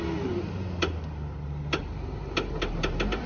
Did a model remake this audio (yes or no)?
no